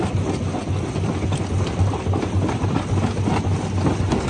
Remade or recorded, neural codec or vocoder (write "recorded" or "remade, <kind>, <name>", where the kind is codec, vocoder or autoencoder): recorded